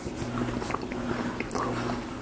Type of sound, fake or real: real